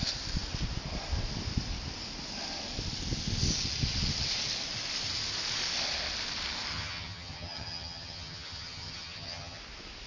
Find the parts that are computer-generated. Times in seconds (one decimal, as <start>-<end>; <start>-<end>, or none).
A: 6.7-9.6